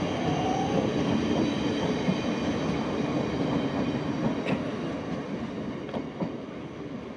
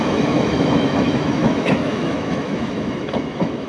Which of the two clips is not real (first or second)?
second